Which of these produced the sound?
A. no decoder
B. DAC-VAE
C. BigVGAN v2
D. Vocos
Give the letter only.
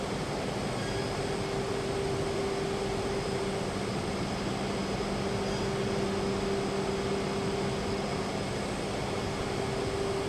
A